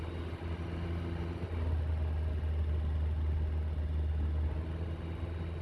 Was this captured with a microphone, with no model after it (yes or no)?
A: yes